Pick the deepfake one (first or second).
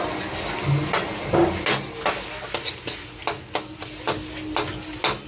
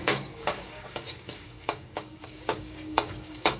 second